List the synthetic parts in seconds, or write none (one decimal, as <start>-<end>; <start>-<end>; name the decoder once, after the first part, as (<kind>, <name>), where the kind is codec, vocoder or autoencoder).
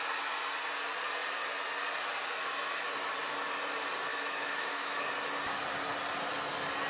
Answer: 4.1-5.1 (autoencoder, DAC-VAE)